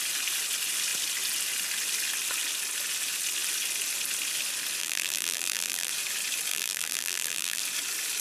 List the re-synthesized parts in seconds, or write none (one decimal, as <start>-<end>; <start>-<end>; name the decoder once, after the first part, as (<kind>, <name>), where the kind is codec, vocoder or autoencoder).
4.8-5.9 (vocoder, BigVGAN v2); 6.5-7.6